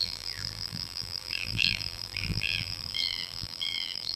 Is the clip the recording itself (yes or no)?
no